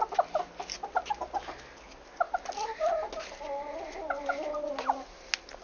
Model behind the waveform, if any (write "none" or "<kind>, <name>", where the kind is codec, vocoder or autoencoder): none